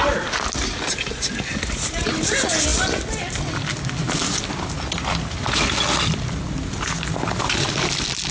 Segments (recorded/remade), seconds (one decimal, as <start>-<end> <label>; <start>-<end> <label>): 0.0-8.3 recorded